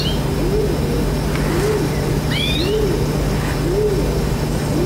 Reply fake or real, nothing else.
real